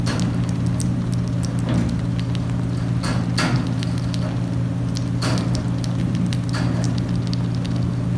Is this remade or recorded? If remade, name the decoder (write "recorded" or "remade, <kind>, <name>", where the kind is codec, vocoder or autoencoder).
recorded